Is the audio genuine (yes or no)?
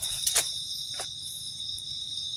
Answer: no